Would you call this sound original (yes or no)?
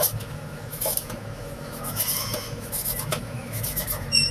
no